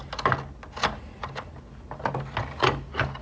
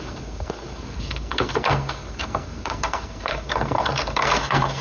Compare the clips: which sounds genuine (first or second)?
first